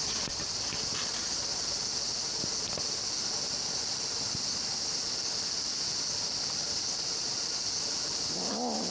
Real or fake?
real